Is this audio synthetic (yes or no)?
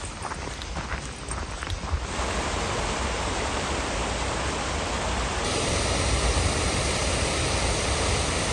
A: no